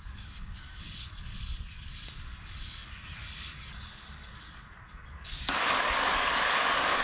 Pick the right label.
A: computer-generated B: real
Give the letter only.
A